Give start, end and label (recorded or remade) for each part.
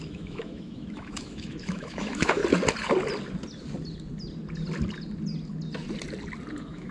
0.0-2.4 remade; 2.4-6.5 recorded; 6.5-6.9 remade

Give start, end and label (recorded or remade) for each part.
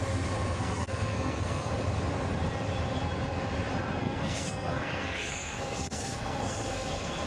0.0-0.6 recorded; 0.6-1.7 remade; 1.7-4.0 recorded; 4.0-7.3 remade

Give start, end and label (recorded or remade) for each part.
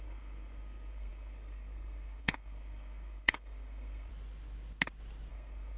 0.0-4.1 remade; 4.1-5.3 recorded; 5.3-5.8 remade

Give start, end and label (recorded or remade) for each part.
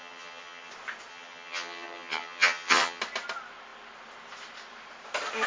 0.0-0.7 remade; 0.7-1.1 recorded; 1.1-3.0 remade; 3.0-5.5 recorded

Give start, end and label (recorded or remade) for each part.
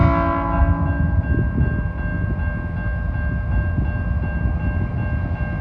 0.0-5.6 recorded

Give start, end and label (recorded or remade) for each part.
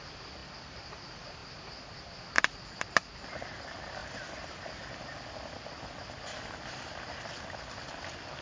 0.0-1.4 remade; 1.4-2.0 recorded; 2.0-4.0 remade; 4.0-7.7 recorded; 7.7-8.4 remade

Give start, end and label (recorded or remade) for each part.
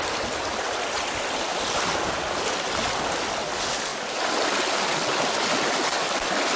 0.0-6.6 recorded